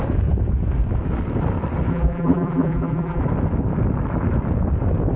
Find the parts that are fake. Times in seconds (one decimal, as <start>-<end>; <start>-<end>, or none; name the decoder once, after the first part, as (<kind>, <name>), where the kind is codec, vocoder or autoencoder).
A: 1.9-3.2 (vocoder, BigVGAN v2)